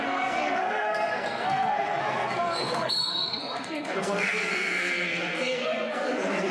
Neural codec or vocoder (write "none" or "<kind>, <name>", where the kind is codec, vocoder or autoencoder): codec, SNAC